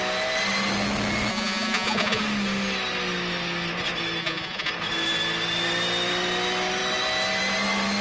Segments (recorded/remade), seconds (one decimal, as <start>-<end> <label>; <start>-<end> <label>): 0.0-1.3 recorded; 1.3-2.2 remade; 2.2-4.2 recorded; 4.2-4.7 remade; 4.7-8.0 recorded